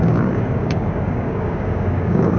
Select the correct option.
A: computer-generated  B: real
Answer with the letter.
A